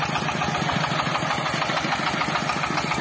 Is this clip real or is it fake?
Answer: real